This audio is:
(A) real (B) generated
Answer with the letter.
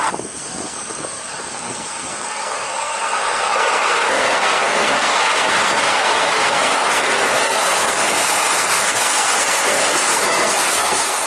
B